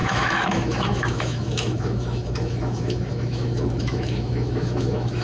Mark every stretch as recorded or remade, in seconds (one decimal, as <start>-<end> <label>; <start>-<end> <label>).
0.0-5.2 remade